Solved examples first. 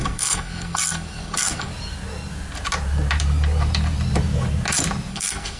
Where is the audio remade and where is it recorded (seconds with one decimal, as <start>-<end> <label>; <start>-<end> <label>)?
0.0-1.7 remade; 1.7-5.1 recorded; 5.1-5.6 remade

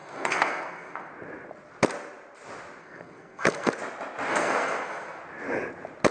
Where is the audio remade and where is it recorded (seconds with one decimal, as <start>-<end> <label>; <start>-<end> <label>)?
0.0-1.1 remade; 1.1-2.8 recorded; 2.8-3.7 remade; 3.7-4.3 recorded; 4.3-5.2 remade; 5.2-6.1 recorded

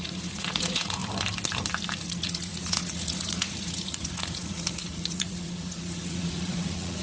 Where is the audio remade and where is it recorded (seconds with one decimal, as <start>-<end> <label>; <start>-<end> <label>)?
0.0-1.0 remade; 1.0-2.0 recorded; 2.0-7.0 remade

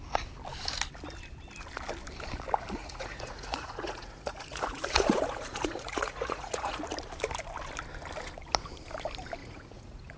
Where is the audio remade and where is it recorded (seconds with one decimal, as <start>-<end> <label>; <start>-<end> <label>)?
0.0-2.8 recorded; 2.8-6.8 remade; 6.8-9.4 recorded; 9.4-10.2 remade

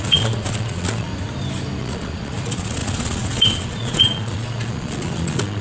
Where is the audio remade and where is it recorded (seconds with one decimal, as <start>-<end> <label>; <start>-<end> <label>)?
0.0-1.1 remade; 1.1-1.8 recorded; 1.8-5.6 remade